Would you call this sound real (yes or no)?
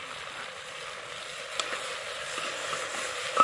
yes